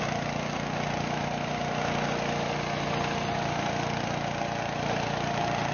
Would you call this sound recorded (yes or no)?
yes